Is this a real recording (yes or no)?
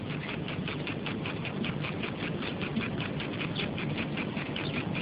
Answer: yes